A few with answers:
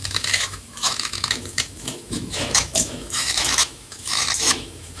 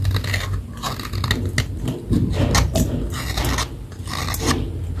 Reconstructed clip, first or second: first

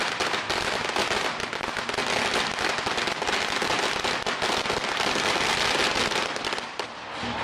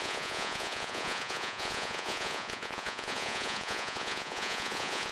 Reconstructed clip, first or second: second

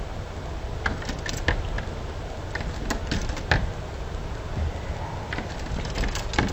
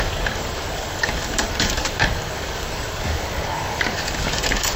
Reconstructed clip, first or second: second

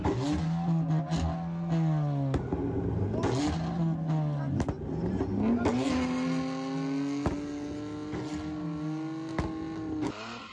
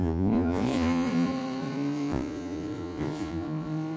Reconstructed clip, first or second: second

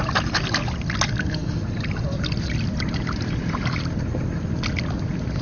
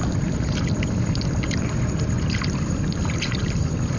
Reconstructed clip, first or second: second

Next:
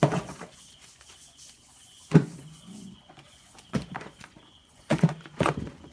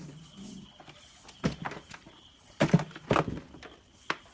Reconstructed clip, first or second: first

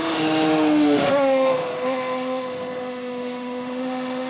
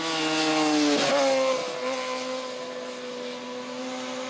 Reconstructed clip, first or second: first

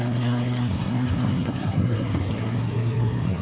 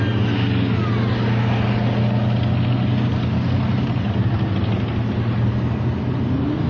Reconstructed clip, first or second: first